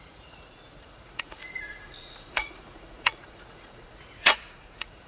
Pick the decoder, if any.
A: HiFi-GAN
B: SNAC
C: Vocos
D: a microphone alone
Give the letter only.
C